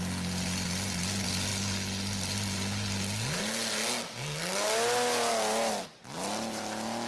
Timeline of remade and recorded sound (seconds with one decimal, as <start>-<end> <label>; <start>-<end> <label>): 0.0-7.1 recorded